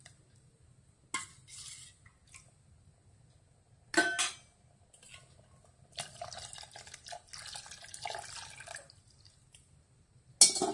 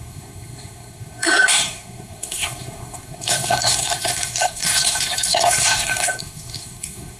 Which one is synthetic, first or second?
second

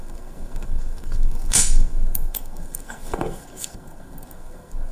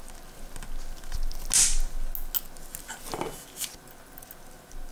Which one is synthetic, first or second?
first